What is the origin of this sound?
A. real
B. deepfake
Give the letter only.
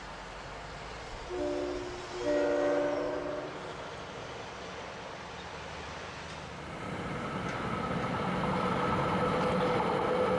A